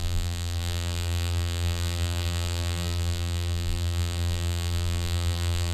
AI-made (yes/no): yes